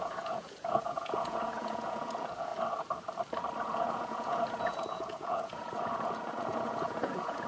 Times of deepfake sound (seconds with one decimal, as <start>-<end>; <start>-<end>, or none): 0.0-2.5; 3.6-7.5

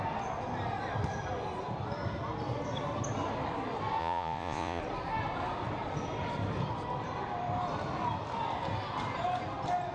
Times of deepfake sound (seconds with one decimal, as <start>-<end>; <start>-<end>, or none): 4.0-4.8

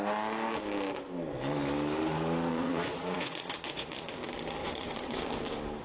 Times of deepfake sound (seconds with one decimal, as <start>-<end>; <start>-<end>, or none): 2.5-4.1; 4.6-5.2